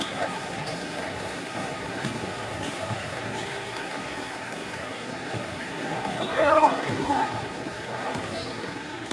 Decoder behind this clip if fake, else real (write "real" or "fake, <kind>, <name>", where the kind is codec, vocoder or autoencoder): fake, codec, SNAC